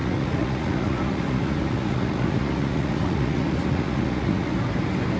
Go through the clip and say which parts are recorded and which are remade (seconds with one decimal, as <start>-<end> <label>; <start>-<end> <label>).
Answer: 0.0-4.5 remade; 4.5-5.2 recorded